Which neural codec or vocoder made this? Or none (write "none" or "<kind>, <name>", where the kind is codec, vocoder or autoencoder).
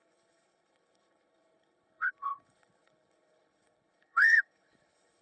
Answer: codec, HILCodec